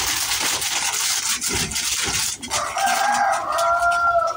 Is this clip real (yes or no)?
yes